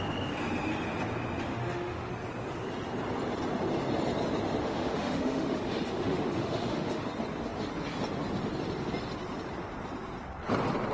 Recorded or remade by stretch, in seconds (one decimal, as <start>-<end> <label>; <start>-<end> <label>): 0.0-1.5 recorded; 1.5-2.1 remade; 2.1-4.6 recorded; 4.6-7.0 remade; 7.0-10.9 recorded

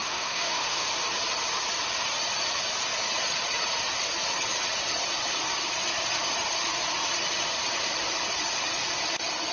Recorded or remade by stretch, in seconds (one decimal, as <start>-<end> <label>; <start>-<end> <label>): 0.0-0.9 remade; 0.9-9.5 recorded

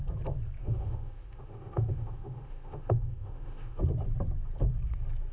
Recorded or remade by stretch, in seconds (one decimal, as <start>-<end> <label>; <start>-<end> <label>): 0.0-0.6 recorded; 0.6-3.8 remade; 3.8-5.3 recorded

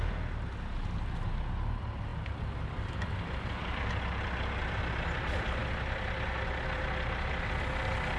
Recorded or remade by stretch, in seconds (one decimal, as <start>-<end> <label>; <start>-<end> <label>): 0.0-8.2 recorded

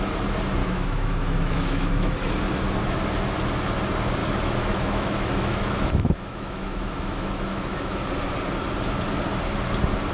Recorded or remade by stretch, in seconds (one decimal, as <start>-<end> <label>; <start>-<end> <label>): 0.0-0.6 recorded; 0.6-2.3 remade; 2.3-4.2 recorded; 4.2-8.0 remade; 8.0-10.1 recorded

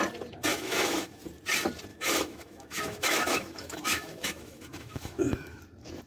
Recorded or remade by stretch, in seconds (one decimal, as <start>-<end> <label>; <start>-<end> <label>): 0.0-0.5 recorded; 0.5-1.2 remade; 1.2-1.9 recorded; 1.9-5.6 remade; 5.6-6.1 recorded

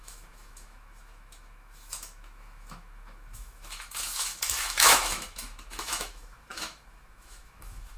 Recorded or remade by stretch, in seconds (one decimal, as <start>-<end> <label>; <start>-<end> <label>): 0.0-8.0 remade

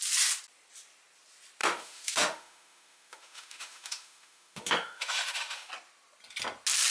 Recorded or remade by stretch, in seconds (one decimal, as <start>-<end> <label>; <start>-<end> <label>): 0.0-1.6 recorded; 1.6-5.7 remade; 5.7-6.9 recorded